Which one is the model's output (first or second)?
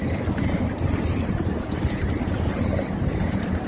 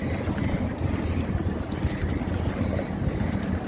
first